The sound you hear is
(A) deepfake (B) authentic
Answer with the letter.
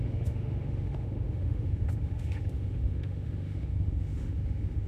A